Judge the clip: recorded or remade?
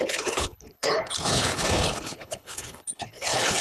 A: remade